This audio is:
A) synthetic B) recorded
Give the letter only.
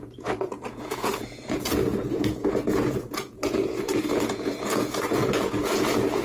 A